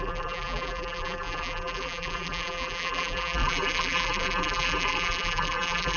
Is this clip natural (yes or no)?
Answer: no